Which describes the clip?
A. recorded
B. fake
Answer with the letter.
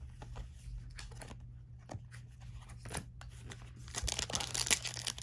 A